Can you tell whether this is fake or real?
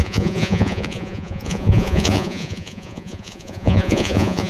fake